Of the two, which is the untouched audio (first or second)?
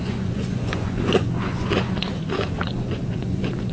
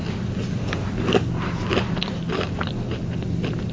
second